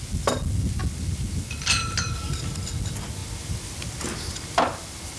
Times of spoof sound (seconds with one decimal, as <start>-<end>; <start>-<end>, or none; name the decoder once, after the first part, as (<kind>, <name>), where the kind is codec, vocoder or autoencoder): none